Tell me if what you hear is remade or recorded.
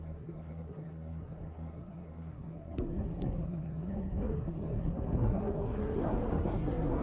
remade